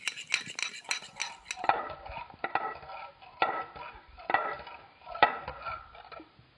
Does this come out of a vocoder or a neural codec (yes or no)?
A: no